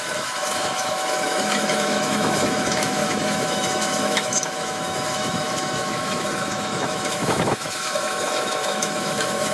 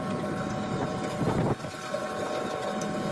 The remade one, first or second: first